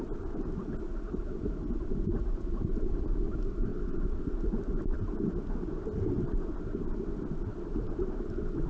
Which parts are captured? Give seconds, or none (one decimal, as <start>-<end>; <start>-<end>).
0.0-3.7; 4.4-8.7